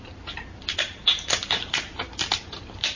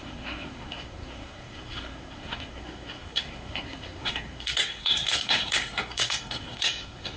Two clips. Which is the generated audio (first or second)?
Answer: second